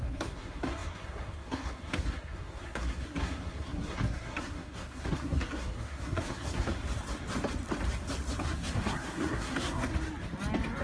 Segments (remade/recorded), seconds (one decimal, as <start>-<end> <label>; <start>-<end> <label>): 0.0-6.8 remade; 6.8-8.4 recorded; 8.4-9.9 remade; 9.9-10.8 recorded